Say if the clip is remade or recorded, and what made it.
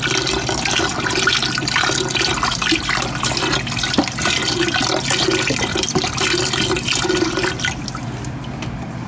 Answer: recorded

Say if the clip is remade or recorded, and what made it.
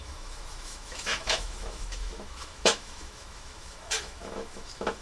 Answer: remade, autoencoder, DAC-VAE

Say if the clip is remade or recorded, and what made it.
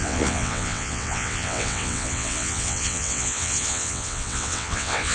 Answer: remade, vocoder, WaveNeXt